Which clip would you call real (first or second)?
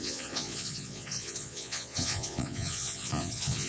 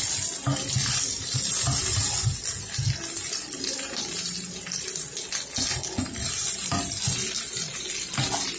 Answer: second